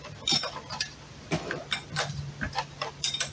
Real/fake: fake